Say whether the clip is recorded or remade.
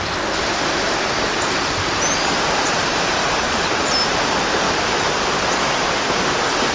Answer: recorded